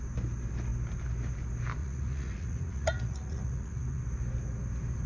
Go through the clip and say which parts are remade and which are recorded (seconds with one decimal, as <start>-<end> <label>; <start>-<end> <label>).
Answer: 0.0-1.8 recorded; 1.8-4.0 remade; 4.0-5.1 recorded